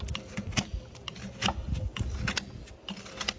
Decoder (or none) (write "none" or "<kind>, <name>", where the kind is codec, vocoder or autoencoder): none